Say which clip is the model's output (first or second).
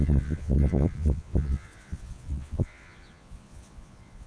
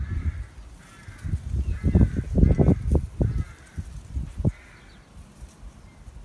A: first